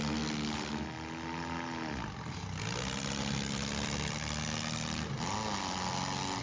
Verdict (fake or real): real